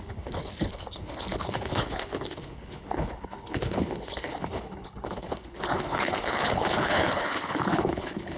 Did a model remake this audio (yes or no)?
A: yes